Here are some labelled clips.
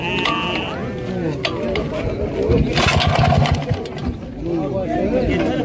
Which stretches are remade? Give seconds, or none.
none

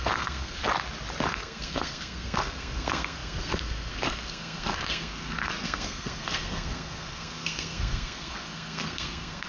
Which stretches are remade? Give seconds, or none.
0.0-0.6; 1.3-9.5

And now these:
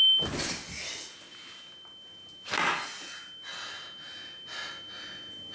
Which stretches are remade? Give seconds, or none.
none